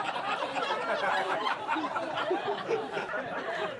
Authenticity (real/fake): fake